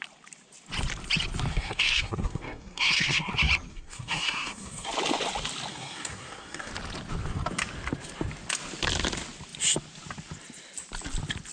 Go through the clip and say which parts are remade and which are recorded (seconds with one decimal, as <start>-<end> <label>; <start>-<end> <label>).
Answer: 0.0-1.5 recorded; 1.5-3.3 remade; 3.3-3.7 recorded; 3.7-4.9 remade; 4.9-5.7 recorded; 5.7-6.7 remade; 6.7-11.5 recorded